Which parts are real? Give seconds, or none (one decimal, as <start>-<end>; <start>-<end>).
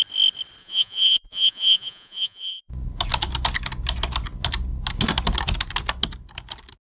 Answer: 0.0-0.6; 2.7-6.8